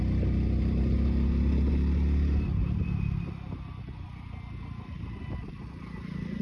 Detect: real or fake real